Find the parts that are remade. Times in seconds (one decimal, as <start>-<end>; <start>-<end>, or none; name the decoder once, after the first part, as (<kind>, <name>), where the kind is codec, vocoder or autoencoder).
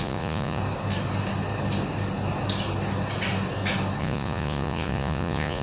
0.0-0.6 (vocoder, Vocos); 4.0-5.6